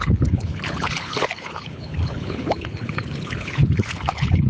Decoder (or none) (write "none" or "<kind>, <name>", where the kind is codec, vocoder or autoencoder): codec, HILCodec